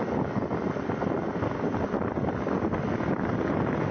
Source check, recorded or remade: recorded